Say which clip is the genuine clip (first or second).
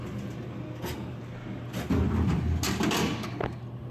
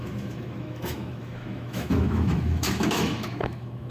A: first